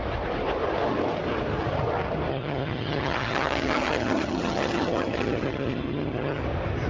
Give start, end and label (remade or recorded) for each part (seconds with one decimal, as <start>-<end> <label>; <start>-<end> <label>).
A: 0.0-2.3 recorded; 2.3-6.4 remade; 6.4-6.9 recorded